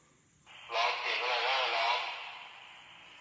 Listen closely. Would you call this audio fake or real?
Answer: real